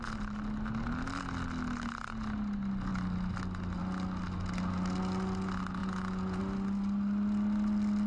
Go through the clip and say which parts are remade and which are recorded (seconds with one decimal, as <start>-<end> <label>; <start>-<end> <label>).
0.0-5.8 recorded; 5.8-6.4 remade; 6.4-8.1 recorded